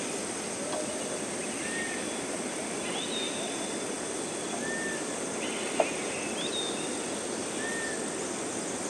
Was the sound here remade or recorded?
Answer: recorded